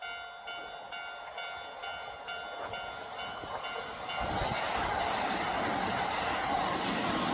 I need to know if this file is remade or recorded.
recorded